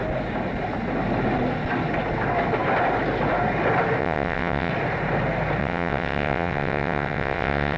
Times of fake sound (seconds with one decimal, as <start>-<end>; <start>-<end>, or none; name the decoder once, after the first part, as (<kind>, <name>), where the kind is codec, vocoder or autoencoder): 4.0-4.7 (vocoder, WaveNeXt); 5.6-7.8